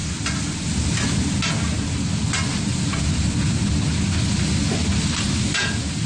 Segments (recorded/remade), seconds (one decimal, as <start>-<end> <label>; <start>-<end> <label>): 0.0-6.1 recorded